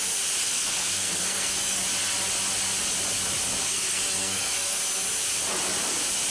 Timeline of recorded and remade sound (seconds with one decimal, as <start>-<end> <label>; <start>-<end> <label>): 0.0-0.4 recorded; 0.4-1.8 remade; 1.8-3.6 recorded; 3.6-4.8 remade; 4.8-6.3 recorded